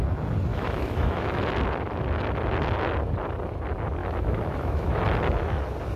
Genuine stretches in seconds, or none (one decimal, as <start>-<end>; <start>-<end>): 0.0-0.5; 1.4-4.0; 5.0-6.0